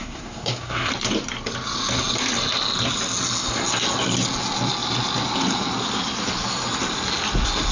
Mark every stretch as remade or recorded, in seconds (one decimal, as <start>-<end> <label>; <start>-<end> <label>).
0.0-0.9 remade; 0.9-7.7 recorded